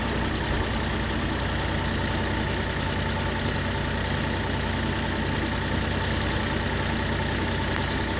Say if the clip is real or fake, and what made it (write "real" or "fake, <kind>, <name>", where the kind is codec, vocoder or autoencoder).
real